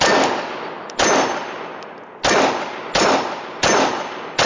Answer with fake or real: real